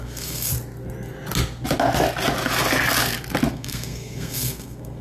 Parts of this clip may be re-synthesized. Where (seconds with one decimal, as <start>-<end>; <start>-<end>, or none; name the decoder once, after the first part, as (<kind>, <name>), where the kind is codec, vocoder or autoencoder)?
0.0-0.5 (codec, SNAC); 3.5-5.0